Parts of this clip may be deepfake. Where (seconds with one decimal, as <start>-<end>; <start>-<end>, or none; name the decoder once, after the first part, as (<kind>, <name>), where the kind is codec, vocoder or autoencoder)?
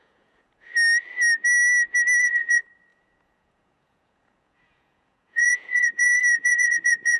0.0-0.7 (vocoder, Vocos); 2.2-7.2